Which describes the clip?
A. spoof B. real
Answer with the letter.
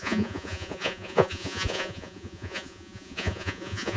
A